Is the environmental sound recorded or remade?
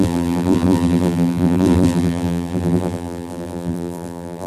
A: remade